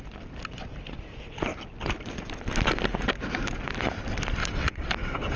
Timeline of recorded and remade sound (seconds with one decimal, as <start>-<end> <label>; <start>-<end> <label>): 0.0-4.4 recorded; 4.4-4.9 remade; 4.9-5.4 recorded